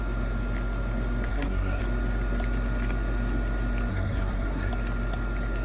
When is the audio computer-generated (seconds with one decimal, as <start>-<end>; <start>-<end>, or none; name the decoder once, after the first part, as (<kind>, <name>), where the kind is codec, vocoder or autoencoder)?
1.3-1.8 (codec, SNAC); 3.9-4.7